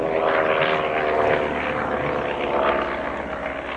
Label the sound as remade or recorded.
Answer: recorded